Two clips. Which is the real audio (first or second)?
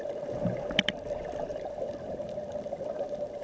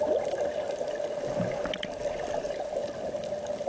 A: second